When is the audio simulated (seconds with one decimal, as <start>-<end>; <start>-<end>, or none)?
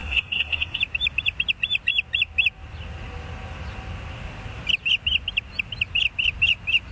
0.0-0.8